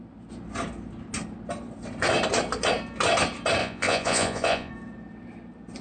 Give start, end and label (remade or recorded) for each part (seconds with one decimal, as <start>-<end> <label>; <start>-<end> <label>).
0.0-3.6 recorded; 3.6-4.7 remade; 4.7-5.8 recorded